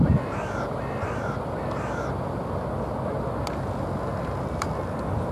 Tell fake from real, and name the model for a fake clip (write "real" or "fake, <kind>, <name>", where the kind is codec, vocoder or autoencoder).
real